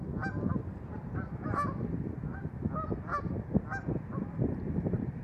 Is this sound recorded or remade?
recorded